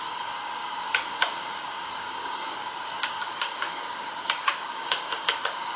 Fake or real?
fake